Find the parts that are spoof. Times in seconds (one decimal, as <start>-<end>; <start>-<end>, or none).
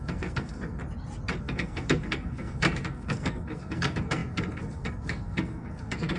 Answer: 0.0-0.8; 1.4-6.2